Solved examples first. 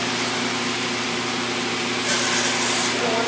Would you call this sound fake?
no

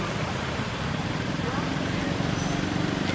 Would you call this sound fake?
no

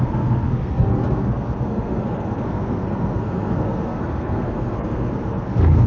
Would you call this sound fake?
yes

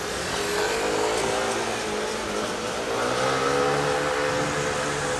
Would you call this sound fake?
no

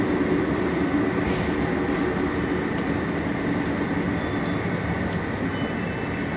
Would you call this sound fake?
no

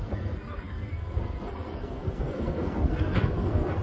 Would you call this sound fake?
yes